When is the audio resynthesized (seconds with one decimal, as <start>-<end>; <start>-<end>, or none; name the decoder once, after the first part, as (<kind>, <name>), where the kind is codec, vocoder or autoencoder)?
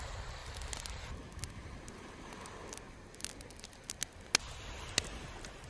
none